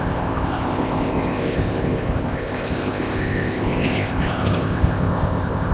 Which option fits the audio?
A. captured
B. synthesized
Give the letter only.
B